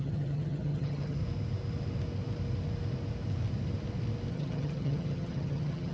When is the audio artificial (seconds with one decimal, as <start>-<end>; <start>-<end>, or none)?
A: 0.0-1.2; 4.3-5.9